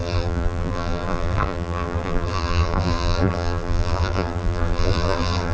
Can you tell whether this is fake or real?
fake